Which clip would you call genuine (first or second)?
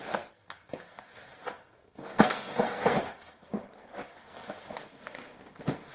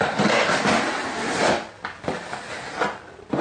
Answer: second